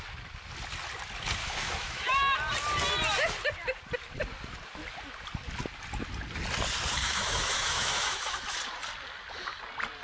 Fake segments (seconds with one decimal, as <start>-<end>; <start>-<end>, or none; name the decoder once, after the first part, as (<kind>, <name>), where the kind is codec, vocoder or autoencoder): 1.4-2.2 (autoencoder, DAC-VAE); 7.0-8.6